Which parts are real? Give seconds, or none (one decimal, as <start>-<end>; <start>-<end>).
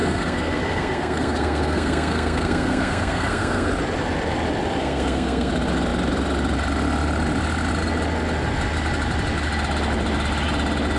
3.7-4.8; 5.5-11.0